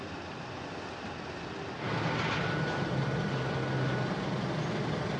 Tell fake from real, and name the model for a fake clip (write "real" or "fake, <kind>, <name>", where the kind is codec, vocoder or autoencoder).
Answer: real